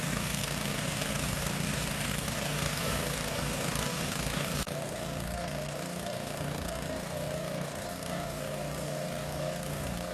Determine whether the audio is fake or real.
fake